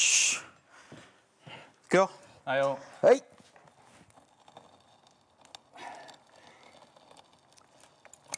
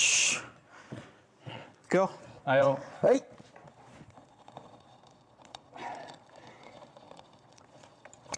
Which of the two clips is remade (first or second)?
second